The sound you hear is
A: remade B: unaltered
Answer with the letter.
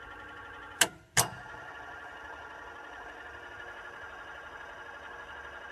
B